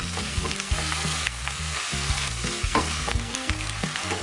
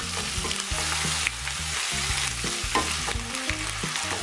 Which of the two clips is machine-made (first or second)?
first